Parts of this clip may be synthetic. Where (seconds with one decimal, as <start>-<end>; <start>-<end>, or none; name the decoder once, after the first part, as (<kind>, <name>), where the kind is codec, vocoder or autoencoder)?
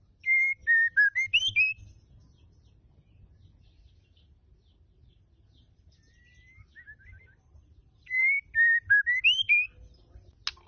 none